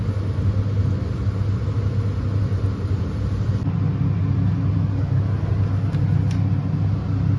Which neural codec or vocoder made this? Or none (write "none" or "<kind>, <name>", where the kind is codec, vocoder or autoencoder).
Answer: none